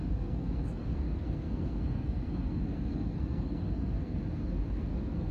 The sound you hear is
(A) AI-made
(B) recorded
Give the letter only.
A